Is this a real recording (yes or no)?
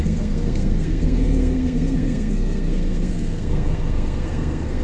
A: no